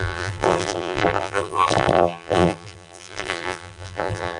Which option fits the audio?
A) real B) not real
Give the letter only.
B